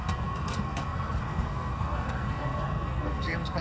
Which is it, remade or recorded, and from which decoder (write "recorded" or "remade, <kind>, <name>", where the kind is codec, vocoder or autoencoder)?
remade, codec, SNAC